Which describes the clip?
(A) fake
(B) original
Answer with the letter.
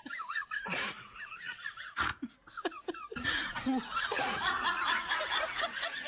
A